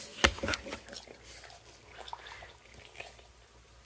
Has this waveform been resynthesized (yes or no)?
no